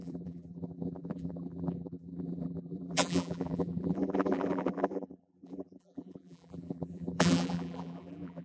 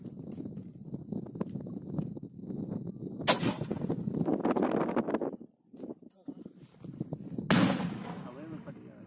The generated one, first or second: first